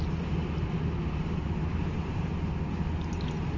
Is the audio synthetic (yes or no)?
no